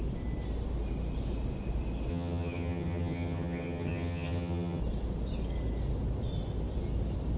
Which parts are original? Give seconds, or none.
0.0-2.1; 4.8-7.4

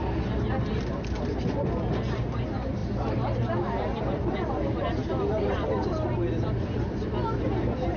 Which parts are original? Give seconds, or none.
0.0-8.0

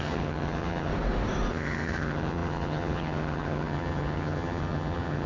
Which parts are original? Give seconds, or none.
0.9-1.5

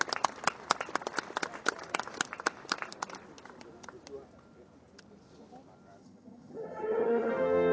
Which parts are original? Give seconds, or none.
0.0-6.0; 7.3-7.7

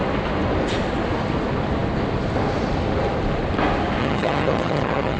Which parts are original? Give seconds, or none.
0.0-4.0

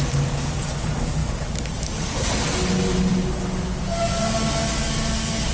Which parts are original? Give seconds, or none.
0.0-5.5

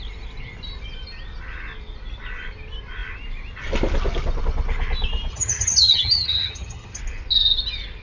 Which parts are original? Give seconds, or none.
0.0-5.3; 7.0-8.0

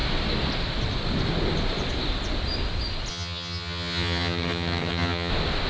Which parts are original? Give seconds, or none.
0.0-3.1; 5.3-5.7